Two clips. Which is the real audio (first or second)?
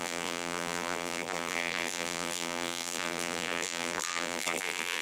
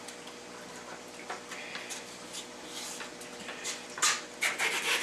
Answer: second